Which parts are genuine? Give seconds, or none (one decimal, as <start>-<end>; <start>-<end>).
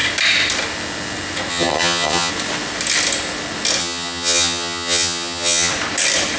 0.0-1.5; 2.3-3.8; 5.7-6.4